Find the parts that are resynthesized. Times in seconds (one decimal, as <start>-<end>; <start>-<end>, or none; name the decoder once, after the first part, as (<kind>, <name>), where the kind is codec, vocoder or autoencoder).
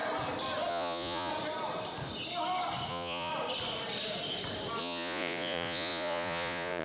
0.7-1.3 (vocoder, Vocos); 2.9-3.3; 4.8-6.8